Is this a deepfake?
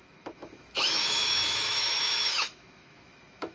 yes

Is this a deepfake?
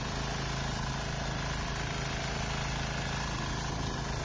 no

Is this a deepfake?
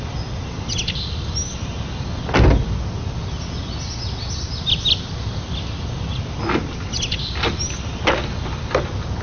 no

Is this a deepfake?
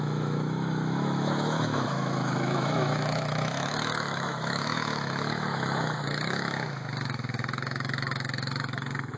yes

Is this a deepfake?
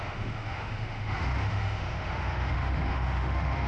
yes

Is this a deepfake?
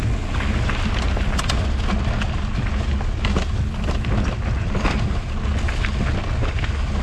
no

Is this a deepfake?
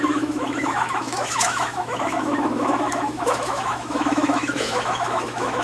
yes